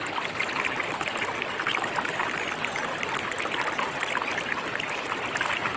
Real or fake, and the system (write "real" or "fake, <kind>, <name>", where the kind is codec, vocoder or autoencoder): fake, vocoder, BigVGAN v2